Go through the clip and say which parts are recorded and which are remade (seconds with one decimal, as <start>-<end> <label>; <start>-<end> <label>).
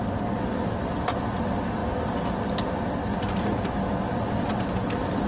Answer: 0.0-5.3 recorded